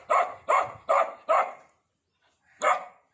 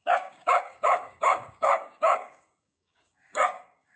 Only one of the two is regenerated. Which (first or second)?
second